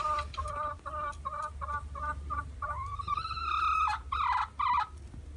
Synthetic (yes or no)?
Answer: no